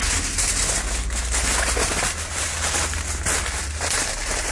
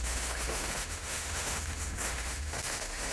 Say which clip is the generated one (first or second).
second